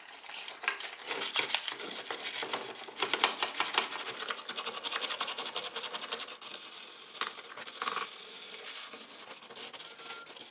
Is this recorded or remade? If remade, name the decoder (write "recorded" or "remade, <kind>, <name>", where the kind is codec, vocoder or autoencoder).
recorded